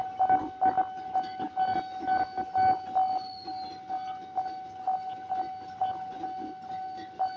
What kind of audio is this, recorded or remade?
recorded